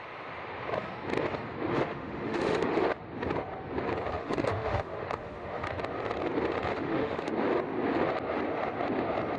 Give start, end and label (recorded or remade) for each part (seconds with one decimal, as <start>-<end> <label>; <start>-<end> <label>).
0.0-1.7 recorded; 1.7-2.9 remade; 2.9-4.2 recorded; 4.2-5.8 remade; 5.8-6.7 recorded; 6.7-7.3 remade; 7.3-9.4 recorded